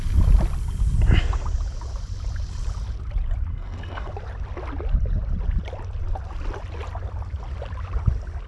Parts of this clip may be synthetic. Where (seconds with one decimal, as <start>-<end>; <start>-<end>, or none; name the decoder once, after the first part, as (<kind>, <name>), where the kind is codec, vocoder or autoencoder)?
3.5-4.1 (codec, SNAC)